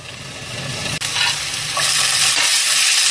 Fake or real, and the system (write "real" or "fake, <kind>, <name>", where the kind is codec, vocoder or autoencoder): real